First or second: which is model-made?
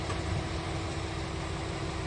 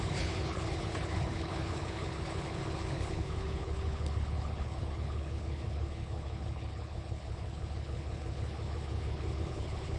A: second